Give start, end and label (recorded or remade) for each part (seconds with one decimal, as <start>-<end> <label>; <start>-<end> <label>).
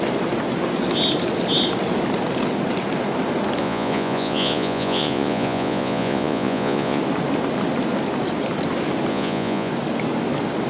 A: 0.0-3.6 recorded; 3.6-7.0 remade; 7.0-9.1 recorded; 9.1-9.7 remade; 9.7-10.7 recorded